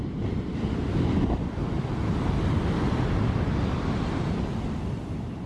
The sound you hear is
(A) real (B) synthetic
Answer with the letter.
A